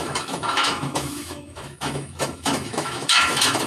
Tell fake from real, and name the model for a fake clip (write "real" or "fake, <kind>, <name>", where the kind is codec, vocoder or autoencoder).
fake, autoencoder, DAC-VAE